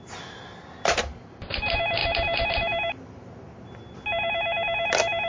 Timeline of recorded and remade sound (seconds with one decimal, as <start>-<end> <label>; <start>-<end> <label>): 0.0-5.3 recorded